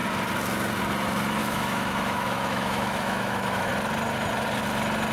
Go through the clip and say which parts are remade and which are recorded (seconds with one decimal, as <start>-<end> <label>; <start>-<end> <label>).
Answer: 0.0-1.4 recorded; 1.4-3.7 remade; 3.7-5.1 recorded